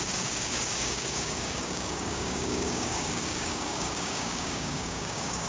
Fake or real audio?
fake